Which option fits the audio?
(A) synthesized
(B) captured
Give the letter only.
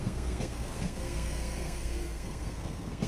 A